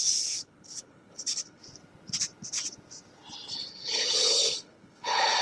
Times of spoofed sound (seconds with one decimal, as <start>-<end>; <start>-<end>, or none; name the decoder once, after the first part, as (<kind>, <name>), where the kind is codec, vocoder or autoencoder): 0.0-1.6 (codec, HILCodec); 3.7-5.4